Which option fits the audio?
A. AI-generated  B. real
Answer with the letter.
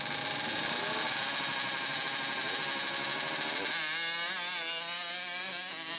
B